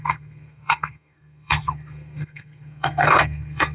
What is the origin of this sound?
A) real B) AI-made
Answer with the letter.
B